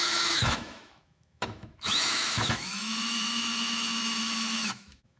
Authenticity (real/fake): fake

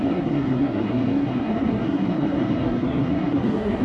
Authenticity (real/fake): fake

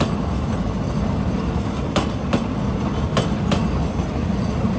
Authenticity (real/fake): real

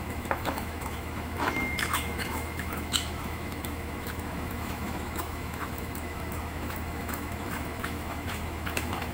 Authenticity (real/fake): fake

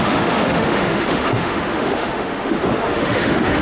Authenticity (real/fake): fake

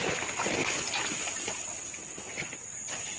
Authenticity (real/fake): real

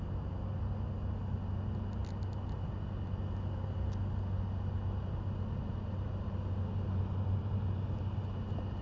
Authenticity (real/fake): real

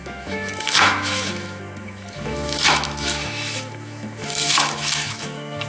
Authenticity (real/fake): fake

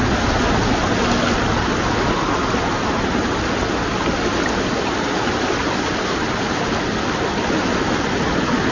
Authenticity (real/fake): real